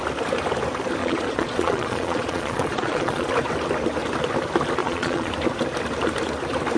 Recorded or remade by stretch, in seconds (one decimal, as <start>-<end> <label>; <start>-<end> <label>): 0.0-1.0 recorded; 1.0-3.3 remade; 3.3-4.8 recorded; 4.8-5.3 remade; 5.3-6.8 recorded